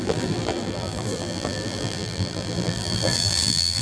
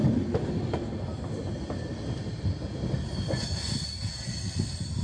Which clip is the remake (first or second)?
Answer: first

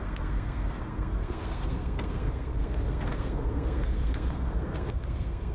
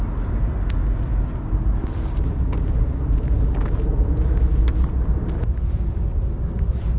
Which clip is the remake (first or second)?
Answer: first